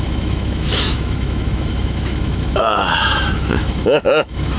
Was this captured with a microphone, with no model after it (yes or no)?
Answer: no